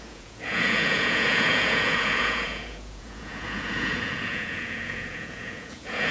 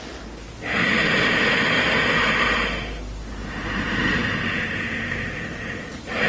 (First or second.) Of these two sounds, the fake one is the first